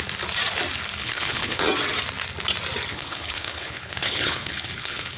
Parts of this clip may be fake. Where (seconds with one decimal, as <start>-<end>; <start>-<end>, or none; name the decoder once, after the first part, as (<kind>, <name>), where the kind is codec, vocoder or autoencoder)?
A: 1.0-1.6 (codec, HILCodec); 2.9-5.2